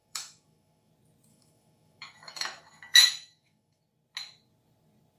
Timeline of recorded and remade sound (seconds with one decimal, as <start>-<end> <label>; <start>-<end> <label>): 0.0-0.9 remade; 0.9-1.3 recorded; 1.3-3.8 remade; 3.8-5.2 recorded